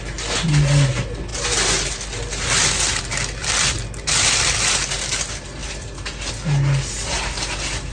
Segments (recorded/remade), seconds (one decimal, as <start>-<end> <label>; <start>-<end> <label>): 0.0-1.3 recorded; 1.3-3.0 remade; 3.0-3.4 recorded; 3.4-4.8 remade; 4.8-5.6 recorded; 5.6-6.3 remade; 6.3-7.9 recorded